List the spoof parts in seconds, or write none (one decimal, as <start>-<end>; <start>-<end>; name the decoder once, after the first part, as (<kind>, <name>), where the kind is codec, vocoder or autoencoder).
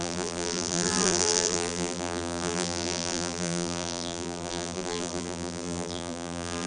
0.0-6.7 (vocoder, BigVGAN v2)